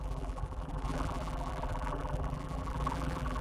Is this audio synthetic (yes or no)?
yes